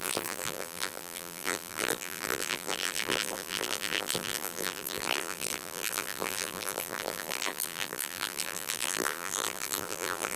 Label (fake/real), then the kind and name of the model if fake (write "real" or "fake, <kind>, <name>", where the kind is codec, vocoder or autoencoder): fake, vocoder, BigVGAN v2